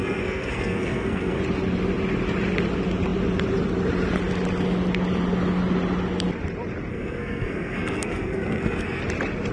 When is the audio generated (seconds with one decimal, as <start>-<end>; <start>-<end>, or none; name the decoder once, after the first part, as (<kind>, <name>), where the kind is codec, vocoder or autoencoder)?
0.0-1.4 (codec, SNAC); 6.9-9.0